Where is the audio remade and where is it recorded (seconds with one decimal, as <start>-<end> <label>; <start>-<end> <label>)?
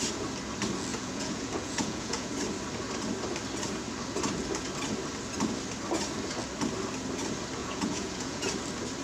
0.0-0.9 recorded; 0.9-2.3 remade; 2.3-7.6 recorded; 7.6-8.5 remade; 8.5-9.0 recorded